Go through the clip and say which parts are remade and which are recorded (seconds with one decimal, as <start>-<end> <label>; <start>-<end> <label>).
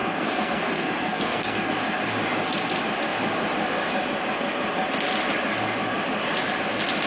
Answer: 0.0-1.7 remade; 1.7-7.1 recorded